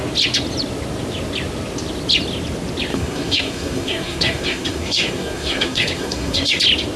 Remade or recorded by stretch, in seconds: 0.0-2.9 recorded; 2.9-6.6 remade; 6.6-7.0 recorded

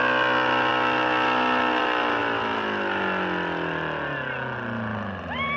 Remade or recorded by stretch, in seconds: 0.0-5.6 recorded

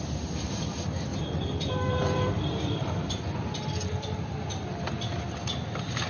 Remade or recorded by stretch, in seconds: 0.0-1.1 recorded; 1.1-3.2 remade; 3.2-6.1 recorded

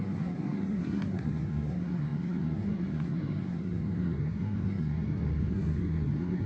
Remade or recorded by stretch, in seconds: 0.0-6.5 remade